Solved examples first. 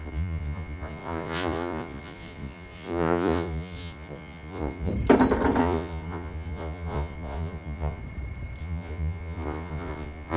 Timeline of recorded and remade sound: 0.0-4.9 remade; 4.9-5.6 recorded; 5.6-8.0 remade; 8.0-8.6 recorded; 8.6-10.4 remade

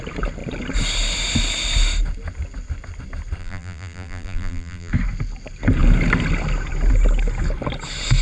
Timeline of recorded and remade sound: 0.0-3.4 recorded; 3.4-4.9 remade; 4.9-8.2 recorded

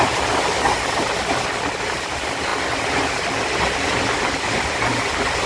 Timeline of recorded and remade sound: 0.0-5.5 recorded